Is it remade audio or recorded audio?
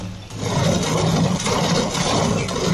recorded